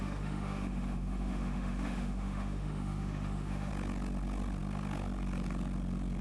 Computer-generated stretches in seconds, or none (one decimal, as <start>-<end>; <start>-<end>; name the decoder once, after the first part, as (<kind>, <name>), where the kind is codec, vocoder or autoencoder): 0.0-3.7 (autoencoder, DAC-VAE)